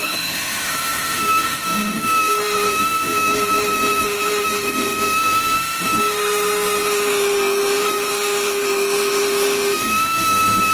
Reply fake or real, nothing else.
fake